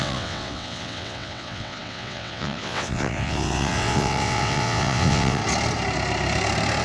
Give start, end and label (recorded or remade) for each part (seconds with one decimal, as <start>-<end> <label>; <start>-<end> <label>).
0.0-5.4 remade; 5.4-6.8 recorded